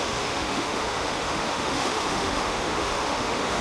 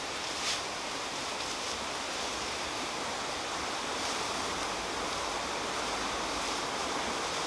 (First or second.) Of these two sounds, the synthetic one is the first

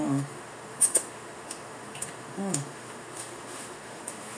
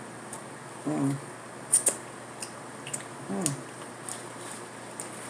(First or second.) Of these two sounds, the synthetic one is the first